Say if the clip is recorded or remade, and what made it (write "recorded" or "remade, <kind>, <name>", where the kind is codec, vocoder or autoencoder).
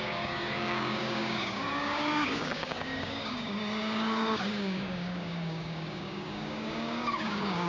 remade, codec, DAC